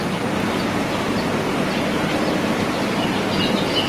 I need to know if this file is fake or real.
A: real